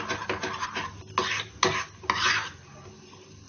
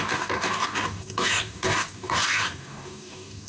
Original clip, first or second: first